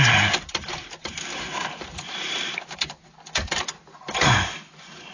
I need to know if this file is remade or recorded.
remade